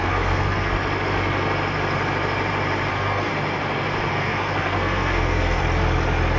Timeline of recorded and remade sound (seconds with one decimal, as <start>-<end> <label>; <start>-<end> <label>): 0.0-0.7 remade; 0.7-2.9 recorded; 2.9-3.3 remade; 3.3-4.1 recorded; 4.1-5.6 remade; 5.6-6.4 recorded